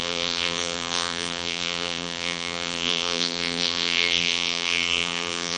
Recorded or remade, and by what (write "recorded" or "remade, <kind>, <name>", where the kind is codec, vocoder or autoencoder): remade, vocoder, BigVGAN v2